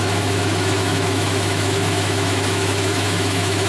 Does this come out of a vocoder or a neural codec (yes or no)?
yes